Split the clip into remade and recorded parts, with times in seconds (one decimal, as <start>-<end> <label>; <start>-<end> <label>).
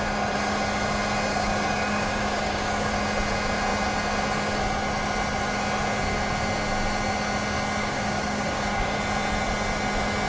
0.0-1.3 recorded; 1.3-2.9 remade; 2.9-7.8 recorded; 7.8-9.0 remade; 9.0-10.3 recorded